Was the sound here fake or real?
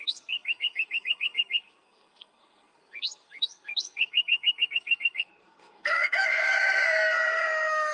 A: fake